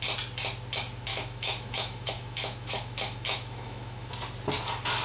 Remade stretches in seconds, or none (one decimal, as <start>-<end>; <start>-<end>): 1.1-4.1